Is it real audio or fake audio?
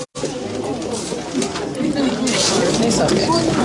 real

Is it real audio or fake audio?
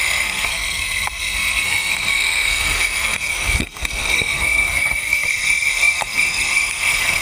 fake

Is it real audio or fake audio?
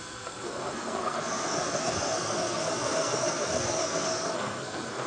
fake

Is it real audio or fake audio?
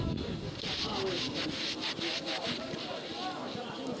real